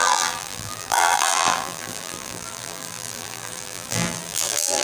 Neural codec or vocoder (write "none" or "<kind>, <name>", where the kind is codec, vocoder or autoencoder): vocoder, BigVGAN v2